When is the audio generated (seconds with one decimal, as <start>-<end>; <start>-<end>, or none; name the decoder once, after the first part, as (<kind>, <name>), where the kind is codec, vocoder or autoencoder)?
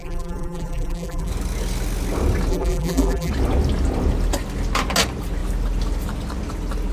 0.0-1.3 (vocoder, BigVGAN v2); 2.5-3.3